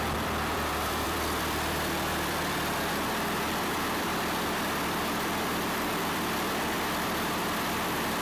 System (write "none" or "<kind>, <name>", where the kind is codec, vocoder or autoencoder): vocoder, BigVGAN v2